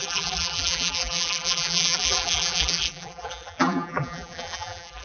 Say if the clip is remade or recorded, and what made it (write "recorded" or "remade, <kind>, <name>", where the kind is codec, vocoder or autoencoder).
remade, vocoder, BigVGAN v2